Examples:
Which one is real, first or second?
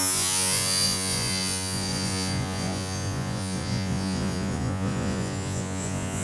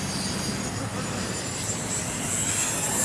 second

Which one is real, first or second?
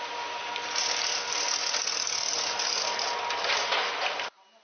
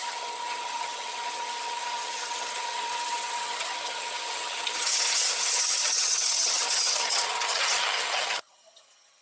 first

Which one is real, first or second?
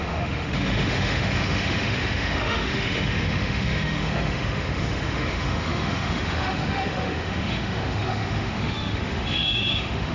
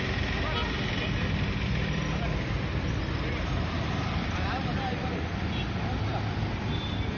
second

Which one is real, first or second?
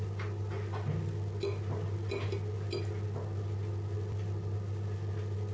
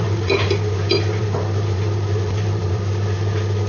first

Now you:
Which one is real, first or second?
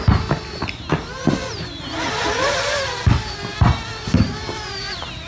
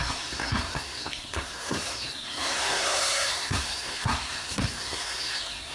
first